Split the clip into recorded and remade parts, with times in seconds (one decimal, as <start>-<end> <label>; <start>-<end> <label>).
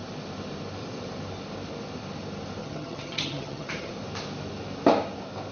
0.0-2.6 recorded; 2.6-3.9 remade; 3.9-5.5 recorded